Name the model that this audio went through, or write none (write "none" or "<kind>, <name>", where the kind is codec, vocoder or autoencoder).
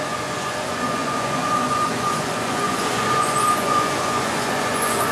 vocoder, Vocos